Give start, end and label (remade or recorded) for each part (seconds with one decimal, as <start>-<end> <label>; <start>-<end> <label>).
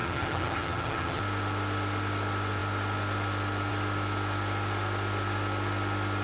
0.0-1.2 remade; 1.2-6.2 recorded